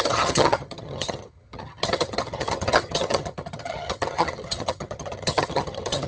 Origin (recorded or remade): remade